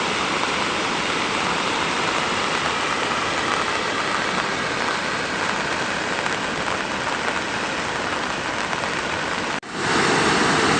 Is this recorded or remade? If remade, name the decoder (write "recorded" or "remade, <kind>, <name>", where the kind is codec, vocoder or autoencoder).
recorded